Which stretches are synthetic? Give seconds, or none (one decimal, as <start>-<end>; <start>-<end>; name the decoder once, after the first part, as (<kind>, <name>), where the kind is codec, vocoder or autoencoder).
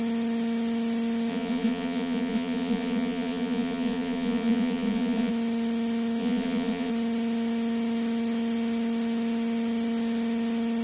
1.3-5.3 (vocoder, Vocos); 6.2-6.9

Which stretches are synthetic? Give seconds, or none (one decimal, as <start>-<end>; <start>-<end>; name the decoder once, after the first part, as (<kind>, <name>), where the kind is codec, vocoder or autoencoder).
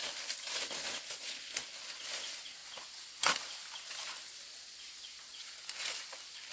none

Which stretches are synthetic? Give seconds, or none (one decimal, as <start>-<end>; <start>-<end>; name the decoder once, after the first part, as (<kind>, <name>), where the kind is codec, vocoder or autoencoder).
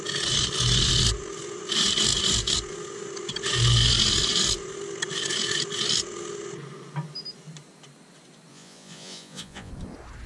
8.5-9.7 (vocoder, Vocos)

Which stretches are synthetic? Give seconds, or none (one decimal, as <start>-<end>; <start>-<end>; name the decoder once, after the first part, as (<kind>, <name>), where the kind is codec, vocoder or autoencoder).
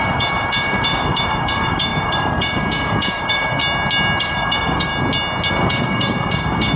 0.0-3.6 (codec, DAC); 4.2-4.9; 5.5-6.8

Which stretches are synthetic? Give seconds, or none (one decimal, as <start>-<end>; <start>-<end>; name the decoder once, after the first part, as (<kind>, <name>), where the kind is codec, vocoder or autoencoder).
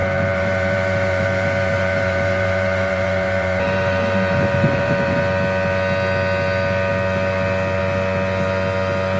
0.0-5.2 (vocoder, BigVGAN v2)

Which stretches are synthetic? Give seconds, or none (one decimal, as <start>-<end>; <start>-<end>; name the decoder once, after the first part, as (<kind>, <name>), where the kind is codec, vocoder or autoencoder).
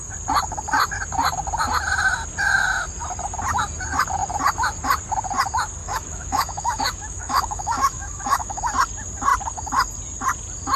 5.8-8.6 (autoencoder, DAC-VAE)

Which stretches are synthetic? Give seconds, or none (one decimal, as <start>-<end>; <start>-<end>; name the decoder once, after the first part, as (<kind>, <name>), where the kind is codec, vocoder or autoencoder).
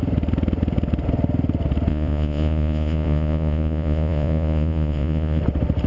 1.9-5.4 (vocoder, Vocos)